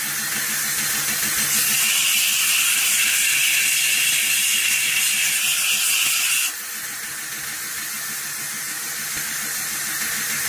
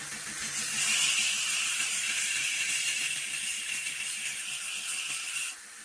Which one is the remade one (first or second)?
second